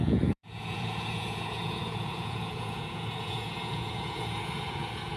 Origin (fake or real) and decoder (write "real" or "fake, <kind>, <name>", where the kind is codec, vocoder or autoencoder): fake, vocoder, Vocos